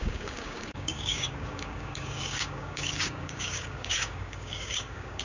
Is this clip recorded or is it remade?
remade